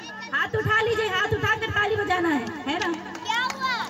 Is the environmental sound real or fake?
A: real